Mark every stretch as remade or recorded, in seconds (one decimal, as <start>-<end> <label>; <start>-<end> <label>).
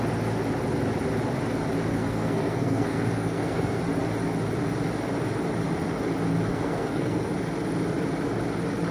0.0-1.9 recorded; 1.9-3.8 remade; 3.8-6.5 recorded; 6.5-7.3 remade; 7.3-8.9 recorded